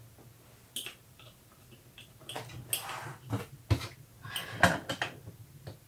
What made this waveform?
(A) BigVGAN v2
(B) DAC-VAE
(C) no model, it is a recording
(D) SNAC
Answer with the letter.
C